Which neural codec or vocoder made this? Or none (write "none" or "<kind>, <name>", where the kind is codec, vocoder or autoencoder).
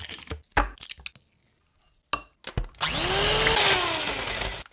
none